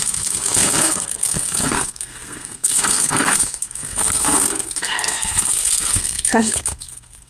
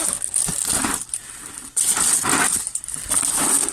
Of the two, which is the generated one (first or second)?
first